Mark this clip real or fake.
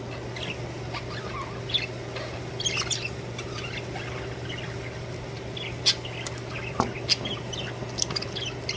real